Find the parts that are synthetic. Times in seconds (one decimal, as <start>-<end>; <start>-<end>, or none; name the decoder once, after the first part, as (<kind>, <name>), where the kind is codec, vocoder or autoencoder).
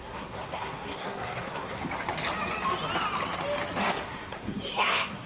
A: 0.0-1.8 (codec, SNAC); 3.8-5.3